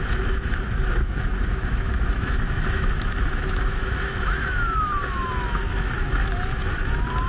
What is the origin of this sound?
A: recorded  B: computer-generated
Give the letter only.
B